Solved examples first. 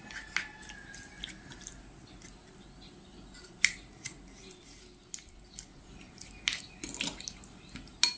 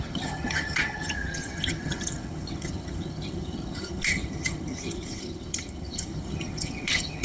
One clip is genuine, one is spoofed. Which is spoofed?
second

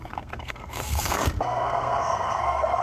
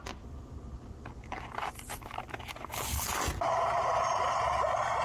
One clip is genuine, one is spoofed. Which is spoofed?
first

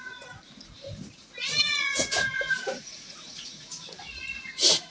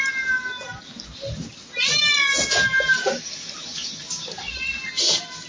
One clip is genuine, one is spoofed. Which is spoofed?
first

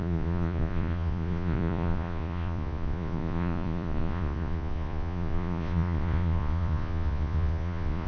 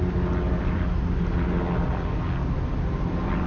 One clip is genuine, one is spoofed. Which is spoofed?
first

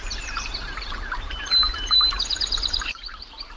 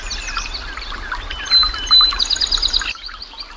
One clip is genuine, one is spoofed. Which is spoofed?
first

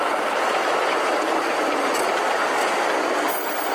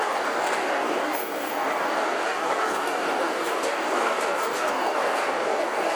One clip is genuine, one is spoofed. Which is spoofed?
second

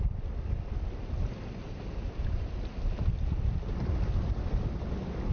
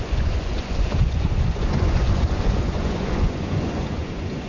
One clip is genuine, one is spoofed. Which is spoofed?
second